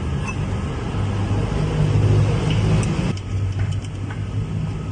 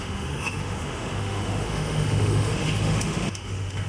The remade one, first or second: second